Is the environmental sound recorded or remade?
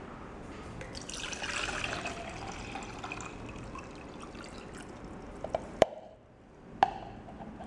recorded